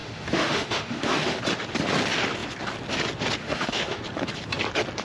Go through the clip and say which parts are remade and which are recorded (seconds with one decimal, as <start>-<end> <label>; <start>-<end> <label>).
0.0-1.4 remade; 1.4-3.4 recorded; 3.4-4.0 remade; 4.0-5.0 recorded